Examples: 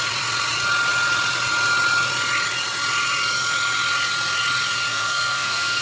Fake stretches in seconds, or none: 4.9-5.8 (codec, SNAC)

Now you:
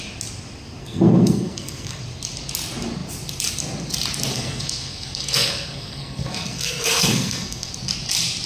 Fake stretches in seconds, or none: 0.8-2.0 (codec, SNAC); 4.3-7.7

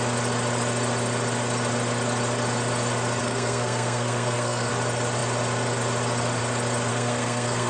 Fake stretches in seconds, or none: 3.2-4.7 (codec, SNAC); 6.9-7.7

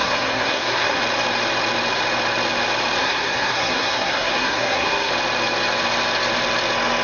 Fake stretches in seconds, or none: 0.0-1.0 (codec, SNAC); 3.0-5.1

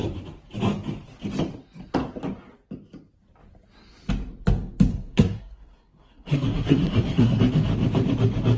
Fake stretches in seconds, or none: 4.9-7.4 (codec, SNAC)

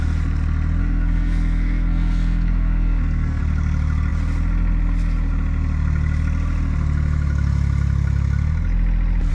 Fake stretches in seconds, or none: 0.8-3.4 (codec, SNAC)